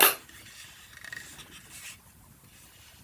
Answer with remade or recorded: recorded